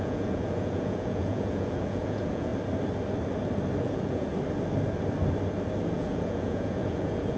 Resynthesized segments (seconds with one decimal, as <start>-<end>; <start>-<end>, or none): 0.0-2.5; 3.8-4.3; 5.9-7.4